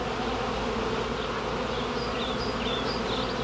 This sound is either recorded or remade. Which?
recorded